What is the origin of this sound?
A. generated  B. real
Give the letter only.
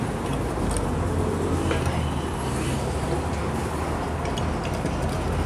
B